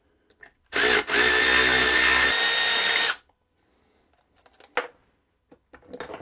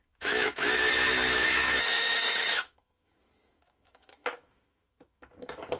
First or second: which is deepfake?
second